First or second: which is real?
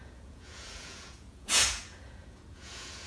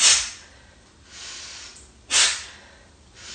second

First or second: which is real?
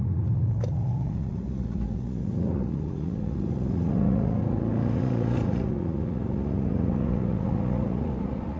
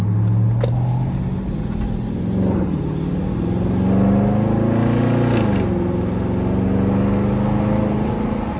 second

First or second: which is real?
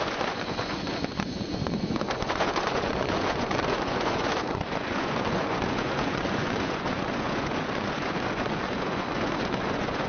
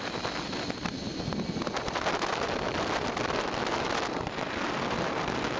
second